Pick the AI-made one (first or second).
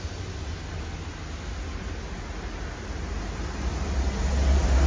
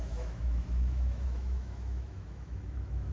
second